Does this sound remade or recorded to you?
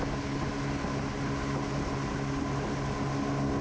recorded